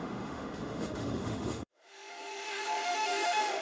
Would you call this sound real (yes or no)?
no